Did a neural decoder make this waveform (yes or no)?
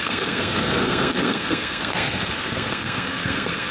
yes